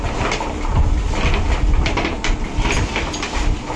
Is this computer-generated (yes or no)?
no